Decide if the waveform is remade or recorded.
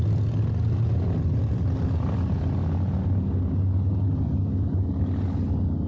recorded